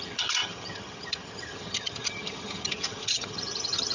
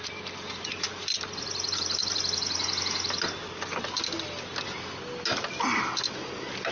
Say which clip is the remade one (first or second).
first